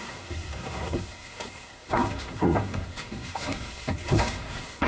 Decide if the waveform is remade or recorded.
remade